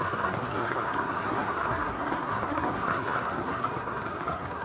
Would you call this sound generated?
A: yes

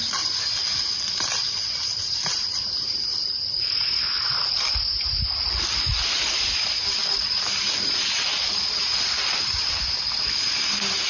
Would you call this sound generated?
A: no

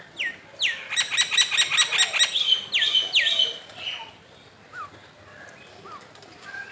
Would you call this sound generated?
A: no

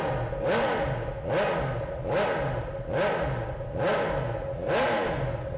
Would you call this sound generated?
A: no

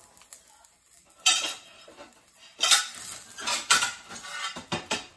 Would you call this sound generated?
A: no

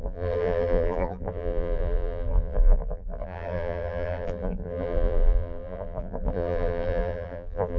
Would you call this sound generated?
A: yes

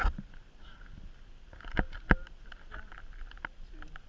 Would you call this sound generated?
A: no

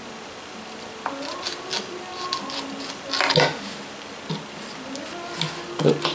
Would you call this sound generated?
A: no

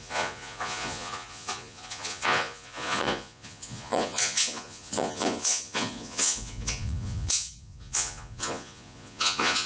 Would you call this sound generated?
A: yes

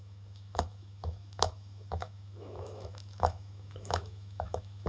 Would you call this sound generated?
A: yes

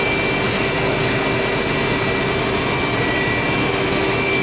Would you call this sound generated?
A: no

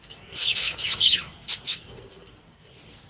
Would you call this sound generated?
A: yes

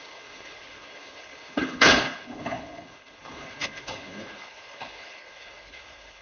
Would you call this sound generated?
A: yes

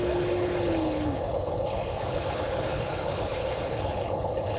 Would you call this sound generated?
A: yes